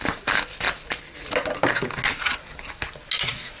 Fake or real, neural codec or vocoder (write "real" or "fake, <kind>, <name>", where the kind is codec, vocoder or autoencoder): real